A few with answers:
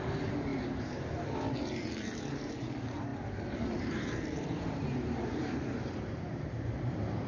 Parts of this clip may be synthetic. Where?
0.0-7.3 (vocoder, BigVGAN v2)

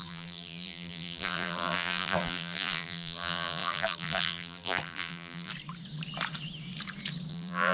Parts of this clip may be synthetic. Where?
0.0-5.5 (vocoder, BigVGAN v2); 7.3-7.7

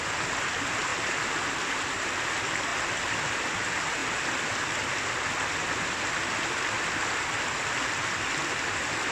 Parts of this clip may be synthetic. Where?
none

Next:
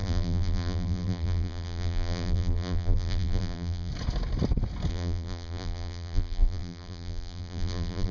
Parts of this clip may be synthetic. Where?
0.0-3.9 (vocoder, BigVGAN v2); 4.9-8.1

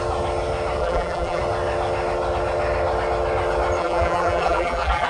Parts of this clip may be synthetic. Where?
0.8-1.4 (vocoder, BigVGAN v2); 3.8-5.1

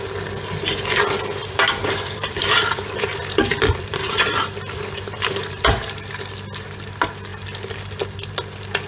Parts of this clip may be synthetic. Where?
1.4-6.1 (vocoder, BigVGAN v2)

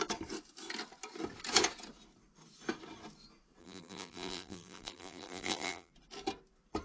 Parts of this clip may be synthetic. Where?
3.6-5.9 (vocoder, BigVGAN v2)

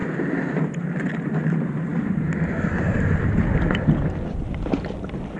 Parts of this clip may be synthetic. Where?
0.5-5.4 (vocoder, BigVGAN v2)